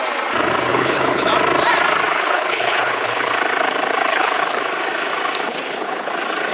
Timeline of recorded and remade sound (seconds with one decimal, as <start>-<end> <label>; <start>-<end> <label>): 0.0-0.7 recorded; 0.7-1.3 remade; 1.3-2.1 recorded; 2.1-3.3 remade; 3.3-4.1 recorded; 4.1-4.6 remade; 4.6-5.5 recorded; 5.5-6.1 remade; 6.1-6.5 recorded